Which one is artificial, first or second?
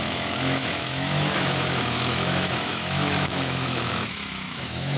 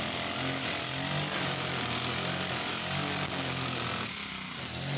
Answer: first